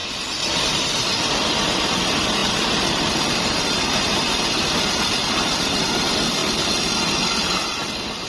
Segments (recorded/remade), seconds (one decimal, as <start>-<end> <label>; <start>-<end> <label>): 0.0-2.4 remade; 2.4-5.8 recorded; 5.8-6.4 remade; 6.4-8.3 recorded

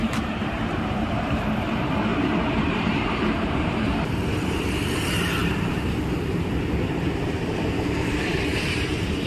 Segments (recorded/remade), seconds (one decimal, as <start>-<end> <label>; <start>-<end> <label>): 0.0-9.3 remade